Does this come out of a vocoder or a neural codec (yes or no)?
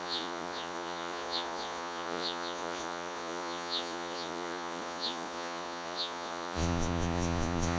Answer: yes